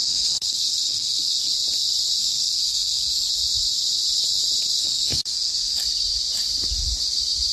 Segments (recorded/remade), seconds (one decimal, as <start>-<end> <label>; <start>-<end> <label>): 0.0-1.5 remade; 1.5-2.2 recorded; 2.2-3.3 remade; 3.3-4.8 recorded; 4.8-5.8 remade; 5.8-7.5 recorded